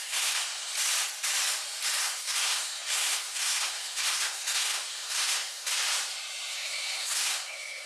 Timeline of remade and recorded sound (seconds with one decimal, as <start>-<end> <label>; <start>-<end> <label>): 0.0-0.7 remade; 0.7-2.0 recorded; 2.0-5.7 remade; 5.7-6.5 recorded; 6.5-7.9 remade